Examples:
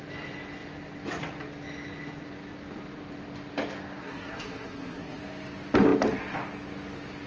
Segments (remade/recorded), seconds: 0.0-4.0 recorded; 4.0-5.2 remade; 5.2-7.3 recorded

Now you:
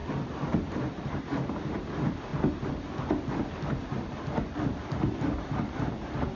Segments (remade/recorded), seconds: 0.0-6.4 recorded

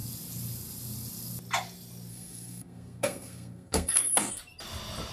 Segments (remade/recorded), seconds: 0.0-2.1 recorded; 2.1-4.4 remade; 4.4-5.1 recorded

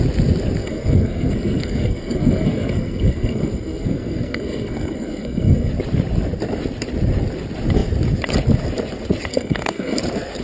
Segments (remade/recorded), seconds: 0.0-0.6 recorded; 0.6-5.7 remade; 5.7-9.3 recorded; 9.3-10.0 remade; 10.0-10.4 recorded

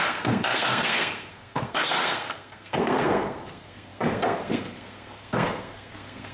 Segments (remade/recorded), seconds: 0.0-6.3 remade

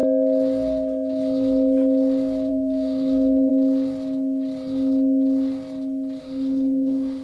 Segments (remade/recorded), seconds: 0.0-2.5 recorded; 2.5-3.5 remade; 3.5-6.2 recorded; 6.2-7.2 remade

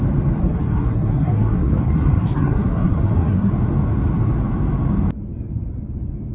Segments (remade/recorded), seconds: 0.0-0.4 recorded; 0.4-3.5 remade; 3.5-6.3 recorded